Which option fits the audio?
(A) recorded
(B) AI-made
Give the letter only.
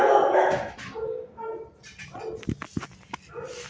A